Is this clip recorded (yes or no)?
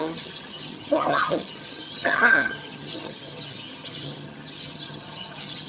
no